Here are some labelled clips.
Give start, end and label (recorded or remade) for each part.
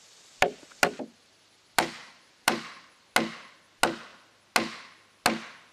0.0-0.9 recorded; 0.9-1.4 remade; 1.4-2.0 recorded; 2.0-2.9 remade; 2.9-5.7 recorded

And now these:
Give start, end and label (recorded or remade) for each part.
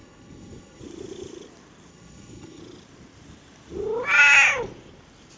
0.0-0.8 remade; 0.8-1.9 recorded; 1.9-2.6 remade; 2.6-5.4 recorded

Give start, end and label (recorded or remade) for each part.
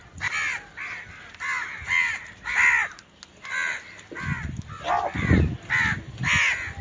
0.0-6.8 recorded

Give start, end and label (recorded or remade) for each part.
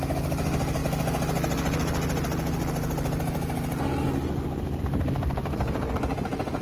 0.0-5.4 recorded; 5.4-5.9 remade; 5.9-6.6 recorded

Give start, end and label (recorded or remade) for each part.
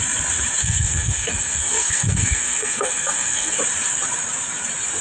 0.0-0.6 recorded; 0.6-3.6 remade; 3.6-5.0 recorded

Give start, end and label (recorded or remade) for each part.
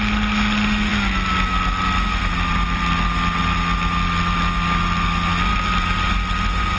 0.0-6.8 recorded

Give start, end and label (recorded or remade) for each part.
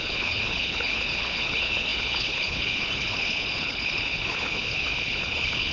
0.0-5.7 remade